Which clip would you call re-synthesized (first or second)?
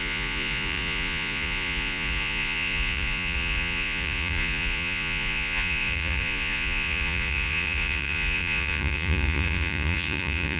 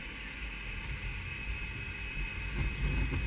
first